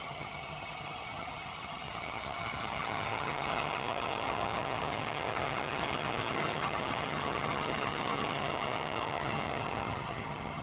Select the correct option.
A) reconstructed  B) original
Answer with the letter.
A